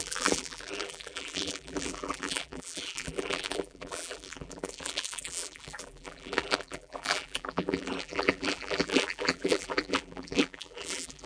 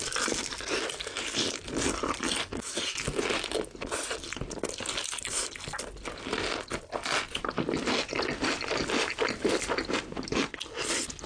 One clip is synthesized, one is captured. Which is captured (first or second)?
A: second